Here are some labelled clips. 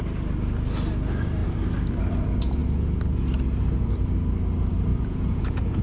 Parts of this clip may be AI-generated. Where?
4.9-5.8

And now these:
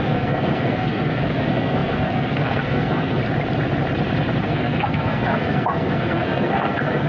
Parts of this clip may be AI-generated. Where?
0.0-3.2; 4.4-7.1

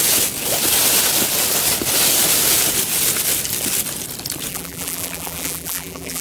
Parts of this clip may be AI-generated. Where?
4.5-6.2

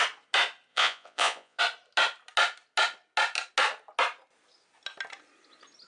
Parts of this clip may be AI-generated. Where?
0.7-1.6

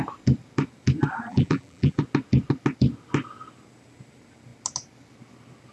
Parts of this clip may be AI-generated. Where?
1.3-2.0